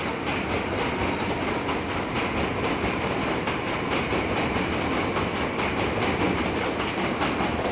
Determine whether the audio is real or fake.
real